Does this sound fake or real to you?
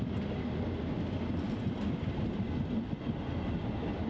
real